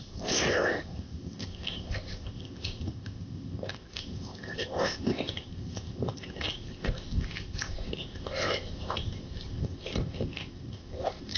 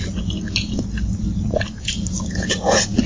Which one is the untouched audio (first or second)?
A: second